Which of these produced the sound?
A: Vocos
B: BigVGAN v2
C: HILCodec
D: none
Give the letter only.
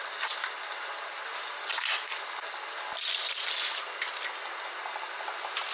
D